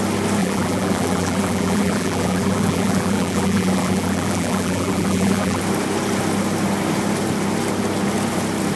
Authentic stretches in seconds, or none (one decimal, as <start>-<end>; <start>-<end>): 0.0-0.4; 5.6-8.8